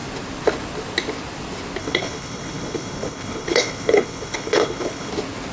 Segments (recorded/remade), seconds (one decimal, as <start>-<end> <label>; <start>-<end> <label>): 0.0-1.8 recorded; 1.8-5.1 remade; 5.1-5.5 recorded